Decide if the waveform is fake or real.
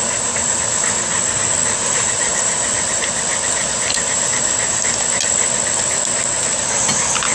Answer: real